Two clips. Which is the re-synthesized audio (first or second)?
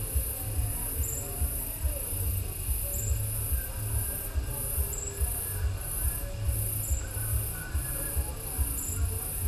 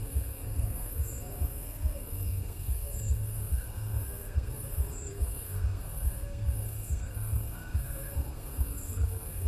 second